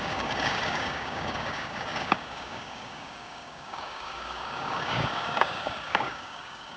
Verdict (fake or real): fake